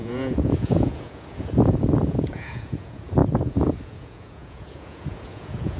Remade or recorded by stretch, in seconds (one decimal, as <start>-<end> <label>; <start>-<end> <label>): 0.0-5.8 remade